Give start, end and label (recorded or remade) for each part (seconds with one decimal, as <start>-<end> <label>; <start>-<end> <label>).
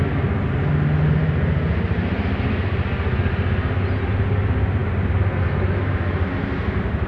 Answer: 0.0-7.1 recorded